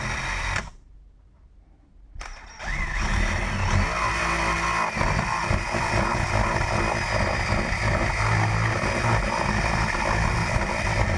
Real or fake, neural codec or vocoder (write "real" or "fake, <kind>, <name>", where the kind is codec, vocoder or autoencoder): real